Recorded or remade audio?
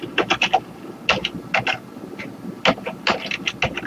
recorded